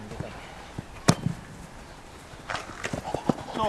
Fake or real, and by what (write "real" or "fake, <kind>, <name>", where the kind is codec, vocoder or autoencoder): real